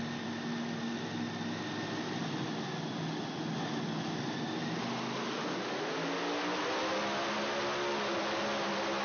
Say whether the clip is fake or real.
real